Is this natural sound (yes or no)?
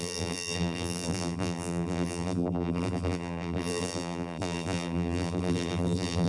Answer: no